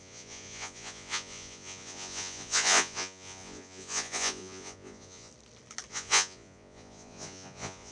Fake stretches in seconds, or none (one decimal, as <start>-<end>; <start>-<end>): 0.0-5.3; 5.9-7.9